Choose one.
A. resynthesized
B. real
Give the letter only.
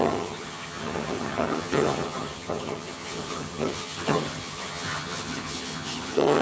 A